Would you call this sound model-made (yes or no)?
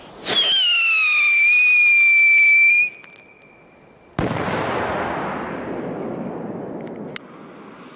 no